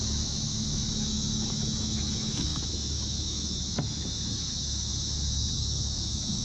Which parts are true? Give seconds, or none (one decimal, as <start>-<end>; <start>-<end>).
none